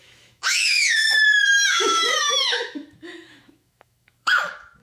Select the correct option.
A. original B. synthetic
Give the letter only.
B